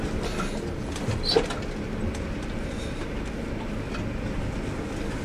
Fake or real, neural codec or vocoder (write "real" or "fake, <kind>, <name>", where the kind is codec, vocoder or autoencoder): real